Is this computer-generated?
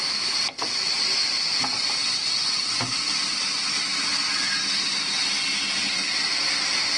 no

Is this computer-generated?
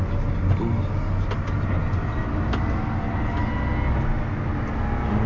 no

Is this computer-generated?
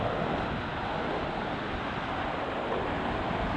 no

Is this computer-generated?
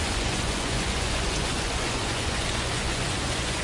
yes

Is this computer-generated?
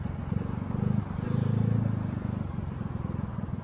no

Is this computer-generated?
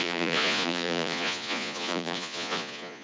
yes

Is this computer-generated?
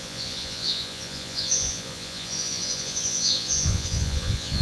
yes